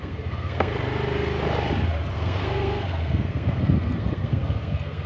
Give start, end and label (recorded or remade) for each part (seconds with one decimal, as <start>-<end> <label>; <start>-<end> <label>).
0.0-0.7 remade; 0.7-2.1 recorded; 2.1-5.1 remade